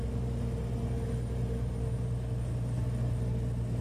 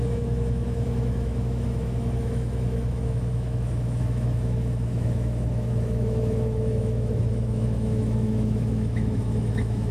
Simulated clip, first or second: second